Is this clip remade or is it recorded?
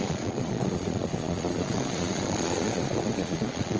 remade